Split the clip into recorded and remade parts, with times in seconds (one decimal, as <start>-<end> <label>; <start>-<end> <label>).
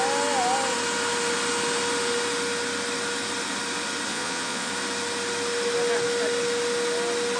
0.0-4.1 recorded; 4.1-4.7 remade; 4.7-7.4 recorded